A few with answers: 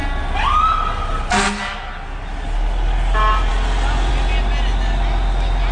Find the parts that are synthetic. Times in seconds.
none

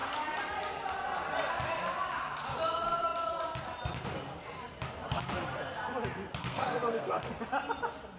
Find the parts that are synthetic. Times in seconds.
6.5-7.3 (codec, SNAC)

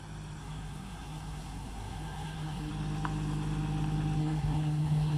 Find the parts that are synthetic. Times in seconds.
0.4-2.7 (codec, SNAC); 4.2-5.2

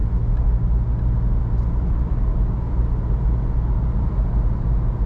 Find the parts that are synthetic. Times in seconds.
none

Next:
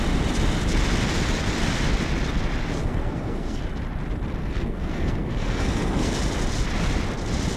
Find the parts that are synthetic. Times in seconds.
2.8-3.6 (codec, SNAC); 4.4-6.1